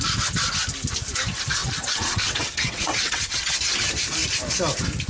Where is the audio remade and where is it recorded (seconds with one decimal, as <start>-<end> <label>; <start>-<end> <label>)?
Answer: 0.0-1.6 recorded; 1.6-3.5 remade; 3.5-5.1 recorded